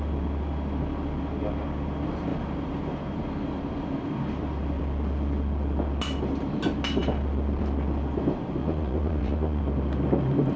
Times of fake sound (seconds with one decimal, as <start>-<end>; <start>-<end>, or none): 8.6-9.6